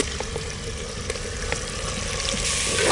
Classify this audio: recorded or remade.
recorded